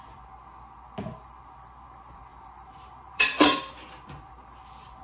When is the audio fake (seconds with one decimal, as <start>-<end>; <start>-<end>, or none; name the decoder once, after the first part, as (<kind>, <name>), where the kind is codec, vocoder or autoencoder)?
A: 2.3-3.6 (vocoder, BigVGAN v2)